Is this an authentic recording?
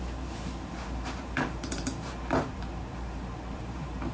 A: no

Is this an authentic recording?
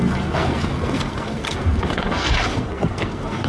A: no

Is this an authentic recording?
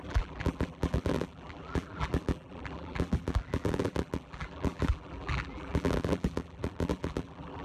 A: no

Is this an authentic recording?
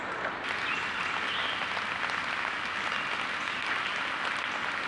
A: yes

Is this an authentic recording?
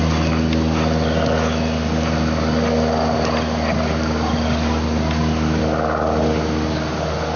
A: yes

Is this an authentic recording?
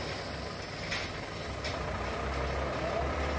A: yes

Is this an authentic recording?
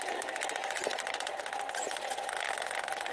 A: yes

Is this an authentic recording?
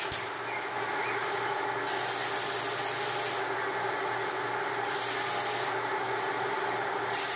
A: yes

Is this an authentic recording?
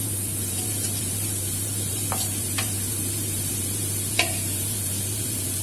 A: no